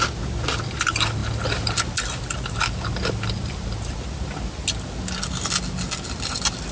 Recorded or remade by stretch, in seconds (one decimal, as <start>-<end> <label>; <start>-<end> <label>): 0.0-6.7 recorded